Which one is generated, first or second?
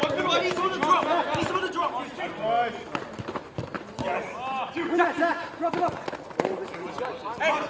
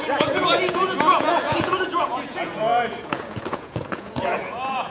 second